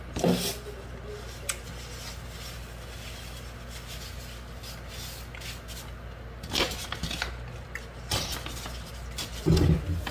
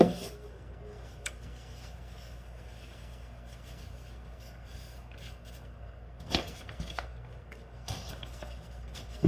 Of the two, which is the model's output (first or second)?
second